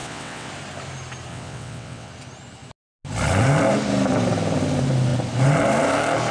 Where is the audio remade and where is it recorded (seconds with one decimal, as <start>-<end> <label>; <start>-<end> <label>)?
0.0-0.5 remade; 0.5-1.3 recorded; 1.3-2.1 remade; 2.1-6.3 recorded

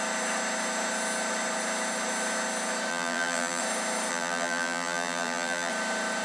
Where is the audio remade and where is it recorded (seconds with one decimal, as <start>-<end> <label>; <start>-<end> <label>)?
0.0-2.9 recorded; 2.9-3.6 remade; 3.6-4.1 recorded; 4.1-5.7 remade; 5.7-6.2 recorded

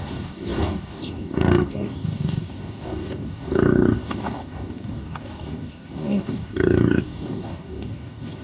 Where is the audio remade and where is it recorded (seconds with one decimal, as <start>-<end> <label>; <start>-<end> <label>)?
0.0-8.4 remade

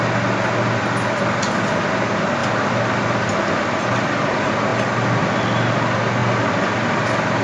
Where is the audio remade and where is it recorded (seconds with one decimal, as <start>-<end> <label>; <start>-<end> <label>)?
0.0-7.4 recorded

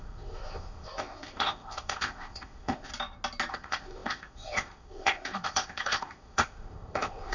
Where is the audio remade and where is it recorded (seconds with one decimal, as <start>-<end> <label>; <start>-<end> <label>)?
0.0-2.9 remade; 2.9-3.5 recorded; 3.5-7.3 remade

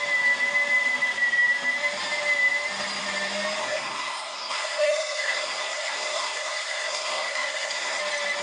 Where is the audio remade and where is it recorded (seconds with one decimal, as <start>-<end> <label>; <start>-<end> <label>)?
0.0-3.6 recorded; 3.6-8.0 remade; 8.0-8.4 recorded

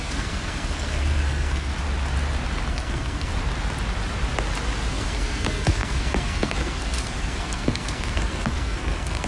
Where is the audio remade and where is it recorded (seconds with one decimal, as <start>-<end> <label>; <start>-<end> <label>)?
0.0-1.7 remade; 1.7-2.7 recorded; 2.7-3.3 remade; 3.3-4.9 recorded; 4.9-9.3 remade

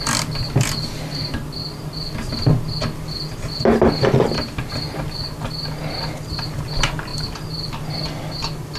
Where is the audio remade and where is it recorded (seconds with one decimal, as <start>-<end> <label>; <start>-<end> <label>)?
0.0-8.8 recorded